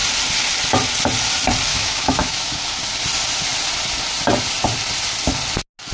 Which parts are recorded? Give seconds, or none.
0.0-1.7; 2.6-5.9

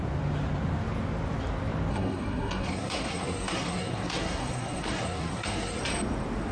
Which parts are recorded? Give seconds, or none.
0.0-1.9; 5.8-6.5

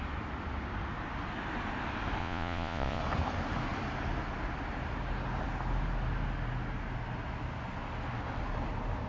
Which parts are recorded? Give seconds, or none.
0.0-2.2; 3.0-9.1

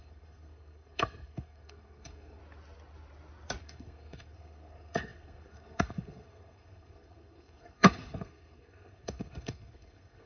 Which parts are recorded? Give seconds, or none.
2.4-3.6

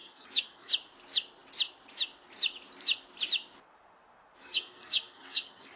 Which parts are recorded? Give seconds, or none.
0.7-4.4

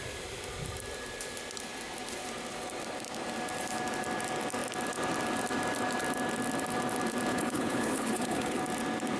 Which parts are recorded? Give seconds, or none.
0.0-7.3; 8.6-9.2

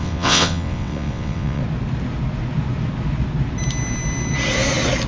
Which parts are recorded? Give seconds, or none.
1.6-5.1

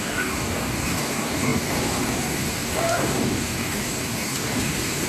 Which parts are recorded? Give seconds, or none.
none